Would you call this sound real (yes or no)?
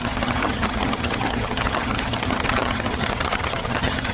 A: no